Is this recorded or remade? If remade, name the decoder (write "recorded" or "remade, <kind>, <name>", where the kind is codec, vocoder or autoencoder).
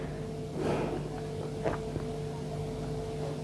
recorded